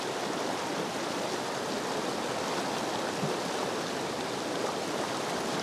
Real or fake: real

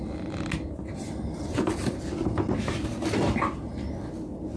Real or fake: real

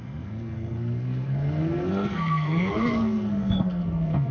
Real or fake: fake